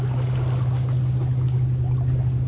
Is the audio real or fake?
real